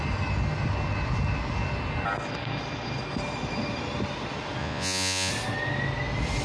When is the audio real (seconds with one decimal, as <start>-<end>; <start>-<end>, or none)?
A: 0.0-4.6; 5.3-6.4